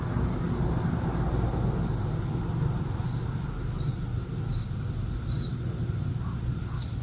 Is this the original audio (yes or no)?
yes